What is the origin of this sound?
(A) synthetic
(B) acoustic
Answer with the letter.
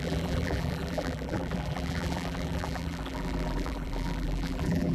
A